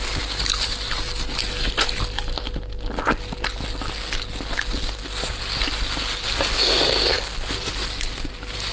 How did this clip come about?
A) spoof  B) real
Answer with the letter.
B